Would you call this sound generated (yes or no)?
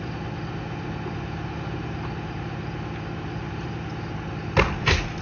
no